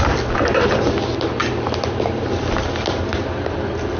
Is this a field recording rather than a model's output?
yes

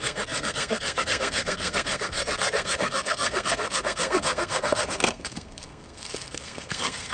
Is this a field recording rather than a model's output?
no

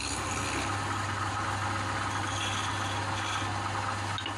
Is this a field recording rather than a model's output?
yes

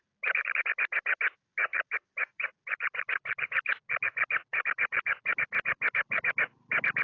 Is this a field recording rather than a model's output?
yes